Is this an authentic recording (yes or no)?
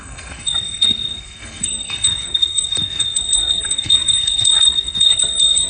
no